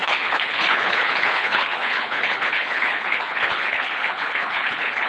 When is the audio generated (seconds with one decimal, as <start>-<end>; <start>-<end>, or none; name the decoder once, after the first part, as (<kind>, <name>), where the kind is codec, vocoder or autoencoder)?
0.0-5.1 (codec, HILCodec)